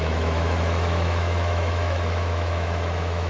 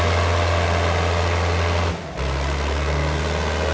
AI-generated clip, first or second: first